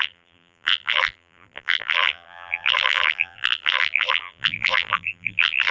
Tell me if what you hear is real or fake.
fake